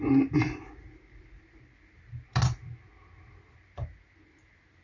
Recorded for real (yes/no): yes